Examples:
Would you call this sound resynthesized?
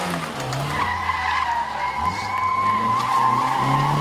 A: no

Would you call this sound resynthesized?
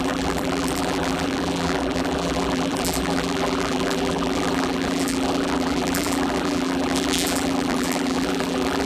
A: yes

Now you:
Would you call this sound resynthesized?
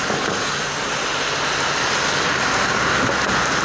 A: no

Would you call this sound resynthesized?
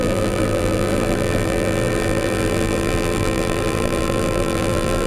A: yes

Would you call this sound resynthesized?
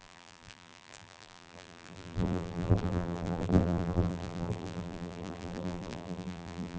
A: yes